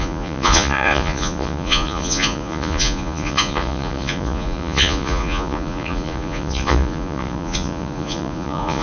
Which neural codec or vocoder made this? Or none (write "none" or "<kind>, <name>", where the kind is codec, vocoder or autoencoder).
vocoder, Vocos